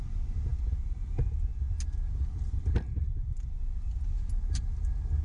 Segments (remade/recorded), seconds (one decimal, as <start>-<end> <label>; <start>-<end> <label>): 0.0-5.2 recorded